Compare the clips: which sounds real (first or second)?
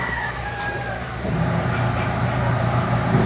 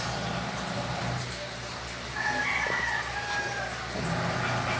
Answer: second